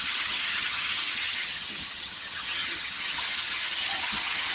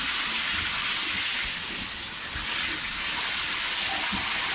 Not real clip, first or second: first